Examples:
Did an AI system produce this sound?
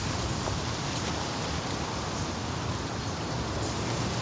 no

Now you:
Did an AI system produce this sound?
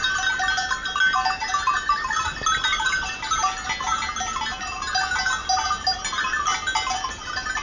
no